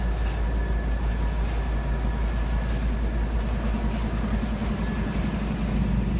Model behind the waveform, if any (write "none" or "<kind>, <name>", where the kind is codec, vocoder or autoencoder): none